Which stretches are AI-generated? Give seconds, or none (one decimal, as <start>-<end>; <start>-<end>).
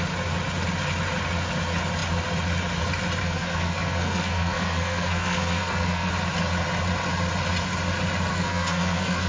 3.2-6.1; 8.3-9.3